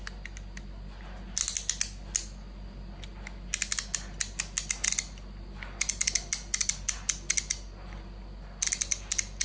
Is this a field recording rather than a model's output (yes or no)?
yes